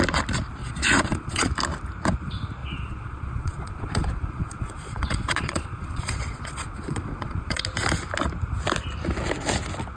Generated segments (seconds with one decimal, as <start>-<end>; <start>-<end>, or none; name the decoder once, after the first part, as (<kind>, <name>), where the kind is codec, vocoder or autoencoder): 0.6-1.5 (vocoder, Vocos); 2.6-7.6